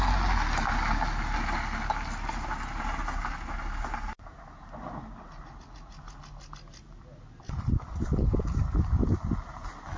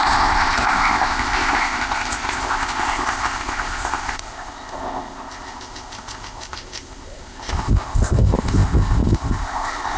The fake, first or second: second